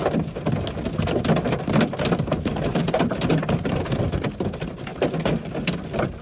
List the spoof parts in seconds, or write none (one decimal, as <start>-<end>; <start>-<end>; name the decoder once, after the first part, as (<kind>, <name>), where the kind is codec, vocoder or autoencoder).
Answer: 2.3-4.9 (vocoder, BigVGAN v2); 5.4-6.2